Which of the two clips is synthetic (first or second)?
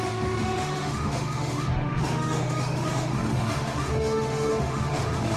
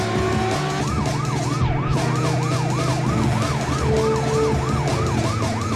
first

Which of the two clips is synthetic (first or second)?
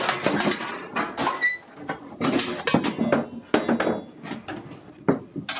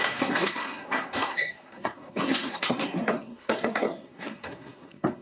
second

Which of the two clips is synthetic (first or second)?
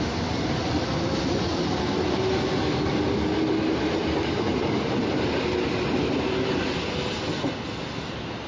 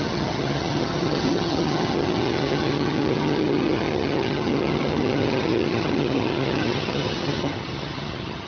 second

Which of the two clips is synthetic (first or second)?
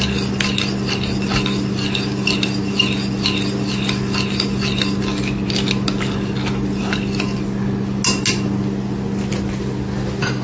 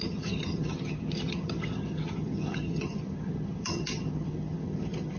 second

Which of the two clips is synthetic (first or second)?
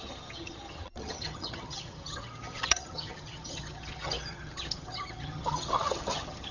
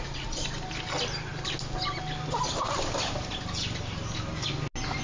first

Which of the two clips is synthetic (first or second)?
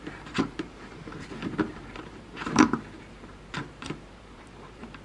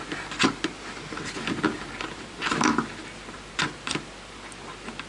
first